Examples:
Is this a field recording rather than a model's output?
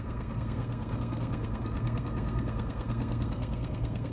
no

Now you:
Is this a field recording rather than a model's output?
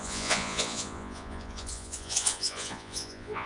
no